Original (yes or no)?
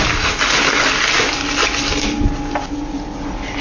yes